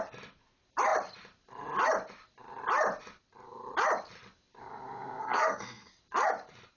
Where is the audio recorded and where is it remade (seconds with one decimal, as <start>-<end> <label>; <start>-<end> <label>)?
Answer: 0.0-5.2 recorded; 5.2-5.9 remade; 5.9-6.8 recorded